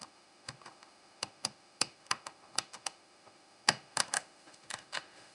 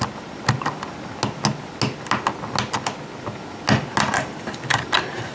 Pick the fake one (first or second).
first